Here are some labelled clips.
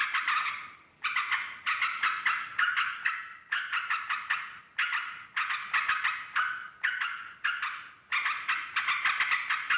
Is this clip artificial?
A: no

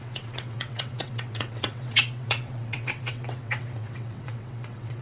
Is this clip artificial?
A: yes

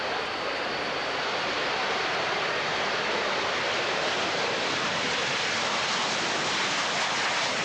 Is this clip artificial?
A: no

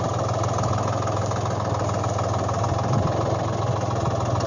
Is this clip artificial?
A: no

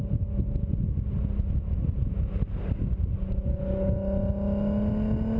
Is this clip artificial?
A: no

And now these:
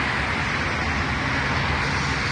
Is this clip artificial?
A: no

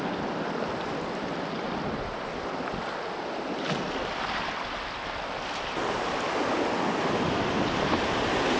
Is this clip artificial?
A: no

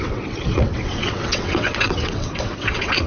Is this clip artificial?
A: yes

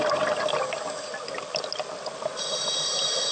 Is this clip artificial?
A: no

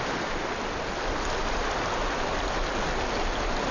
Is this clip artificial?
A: no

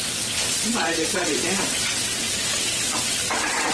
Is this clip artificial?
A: yes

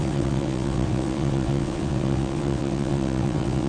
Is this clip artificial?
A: yes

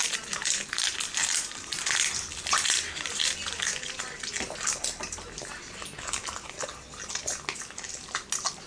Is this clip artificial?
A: no